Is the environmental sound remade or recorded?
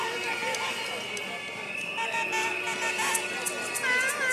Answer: recorded